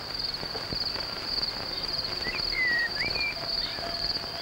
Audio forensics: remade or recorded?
recorded